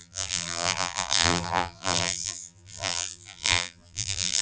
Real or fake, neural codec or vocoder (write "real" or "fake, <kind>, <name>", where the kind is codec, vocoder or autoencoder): fake, vocoder, BigVGAN v2